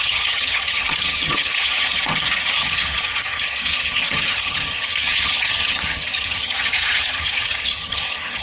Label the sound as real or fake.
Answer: fake